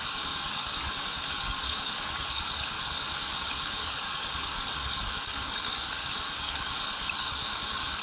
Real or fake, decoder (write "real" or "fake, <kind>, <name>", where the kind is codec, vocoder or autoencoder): fake, codec, DAC